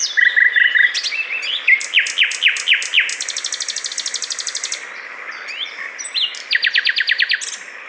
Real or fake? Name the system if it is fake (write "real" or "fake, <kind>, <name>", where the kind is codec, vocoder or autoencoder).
real